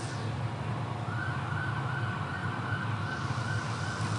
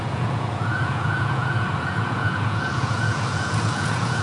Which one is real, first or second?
first